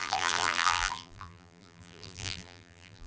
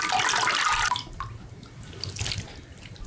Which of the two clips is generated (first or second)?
first